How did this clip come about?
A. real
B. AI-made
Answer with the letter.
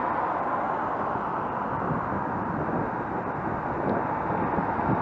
A